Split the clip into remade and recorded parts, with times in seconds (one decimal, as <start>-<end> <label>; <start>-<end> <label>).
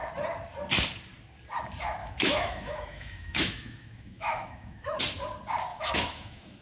0.0-2.0 recorded; 2.0-5.0 remade; 5.0-5.7 recorded; 5.7-6.6 remade